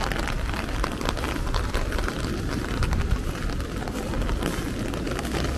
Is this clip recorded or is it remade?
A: recorded